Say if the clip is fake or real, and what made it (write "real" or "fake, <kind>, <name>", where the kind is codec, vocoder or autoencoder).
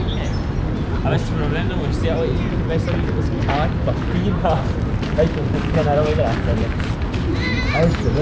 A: real